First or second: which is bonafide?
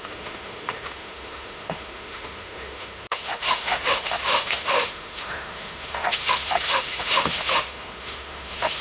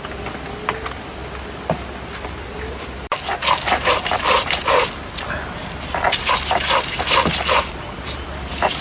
second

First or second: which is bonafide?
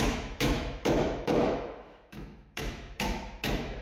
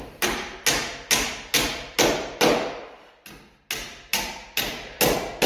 second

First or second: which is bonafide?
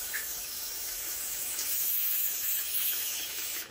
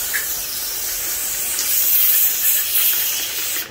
second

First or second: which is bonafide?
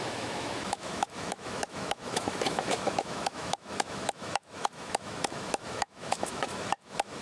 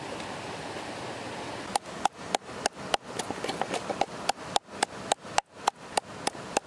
second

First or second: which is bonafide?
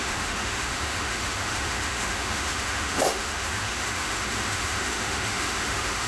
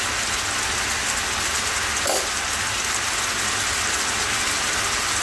second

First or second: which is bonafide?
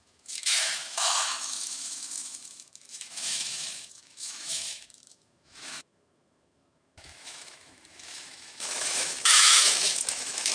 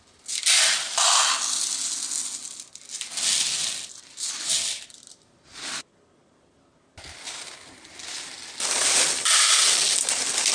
second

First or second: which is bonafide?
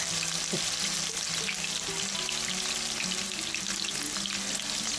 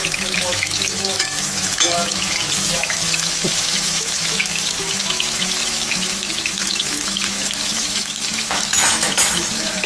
first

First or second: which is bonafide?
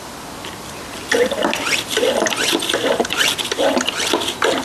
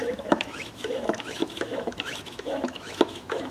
first